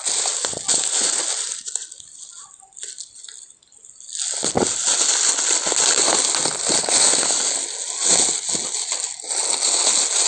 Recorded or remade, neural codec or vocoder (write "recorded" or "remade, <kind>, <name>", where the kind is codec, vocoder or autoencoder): recorded